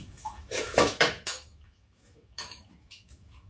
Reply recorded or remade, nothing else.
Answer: remade